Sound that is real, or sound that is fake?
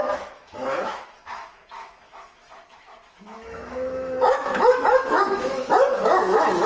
fake